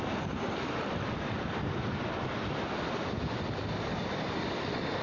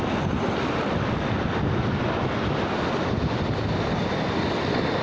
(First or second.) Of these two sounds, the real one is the second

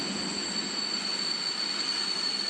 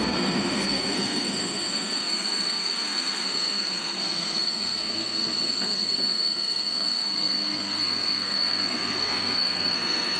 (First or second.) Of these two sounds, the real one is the first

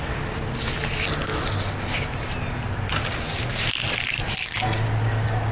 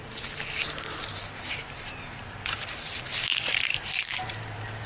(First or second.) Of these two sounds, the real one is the first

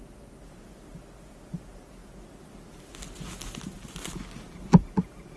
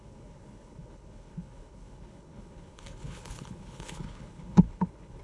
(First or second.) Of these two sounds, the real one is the first